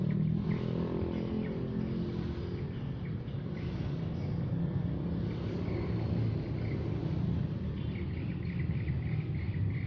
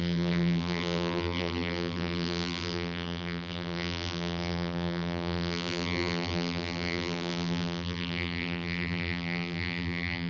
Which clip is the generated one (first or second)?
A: second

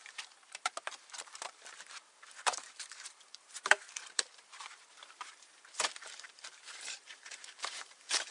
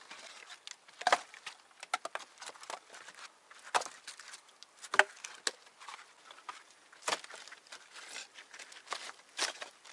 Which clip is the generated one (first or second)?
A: first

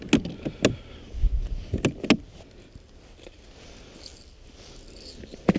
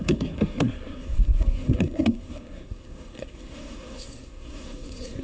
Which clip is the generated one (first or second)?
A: second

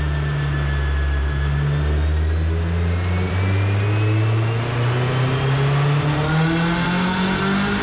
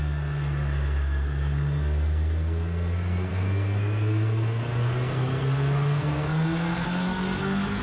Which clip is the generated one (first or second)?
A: second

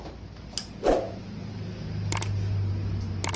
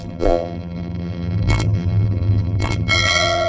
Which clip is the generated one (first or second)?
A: second